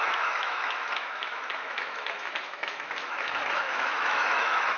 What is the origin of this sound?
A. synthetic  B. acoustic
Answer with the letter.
A